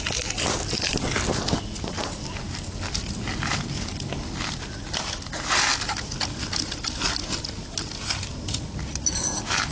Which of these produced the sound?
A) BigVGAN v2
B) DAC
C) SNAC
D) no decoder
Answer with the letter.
D